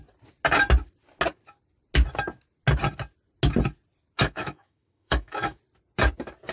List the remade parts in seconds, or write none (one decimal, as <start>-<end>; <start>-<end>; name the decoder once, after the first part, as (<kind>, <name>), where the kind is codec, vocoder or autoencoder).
4.2-5.6 (autoencoder, DAC-VAE)